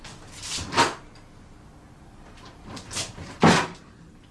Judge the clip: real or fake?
real